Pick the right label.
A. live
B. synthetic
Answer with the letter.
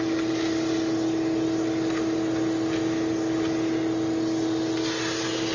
A